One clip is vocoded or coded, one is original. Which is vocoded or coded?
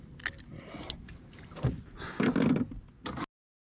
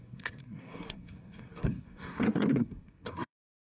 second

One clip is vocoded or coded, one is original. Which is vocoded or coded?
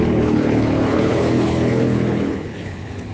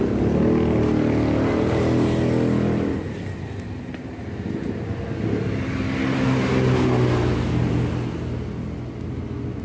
first